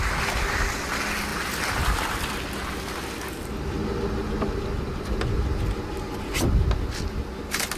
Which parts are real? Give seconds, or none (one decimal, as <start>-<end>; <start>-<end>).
0.0-7.8